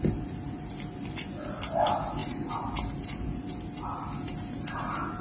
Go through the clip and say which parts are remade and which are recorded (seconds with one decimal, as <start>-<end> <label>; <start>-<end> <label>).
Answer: 0.0-5.2 recorded